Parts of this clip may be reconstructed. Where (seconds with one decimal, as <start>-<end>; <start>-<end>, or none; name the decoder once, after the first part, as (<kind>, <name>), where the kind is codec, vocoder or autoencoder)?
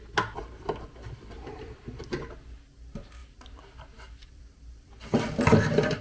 0.6-2.2 (vocoder, BigVGAN v2); 3.2-3.8; 4.2-6.0